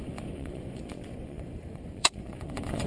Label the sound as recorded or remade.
remade